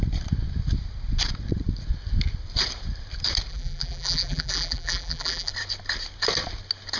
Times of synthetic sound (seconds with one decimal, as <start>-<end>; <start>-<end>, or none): 3.5-5.5